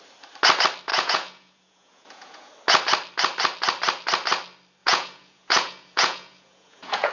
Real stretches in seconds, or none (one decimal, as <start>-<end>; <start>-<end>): 0.0-0.9; 2.5-4.8